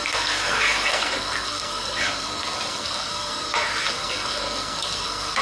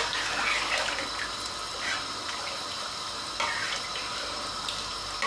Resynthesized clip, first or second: first